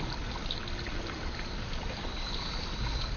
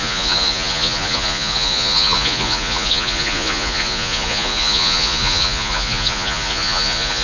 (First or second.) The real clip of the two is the first